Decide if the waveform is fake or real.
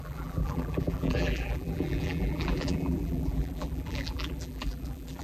fake